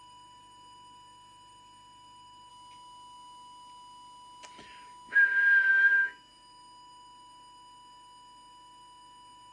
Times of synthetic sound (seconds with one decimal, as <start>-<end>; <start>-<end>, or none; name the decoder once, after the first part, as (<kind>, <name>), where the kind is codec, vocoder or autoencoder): 0.0-2.5 (autoencoder, DAC-VAE); 5.7-9.5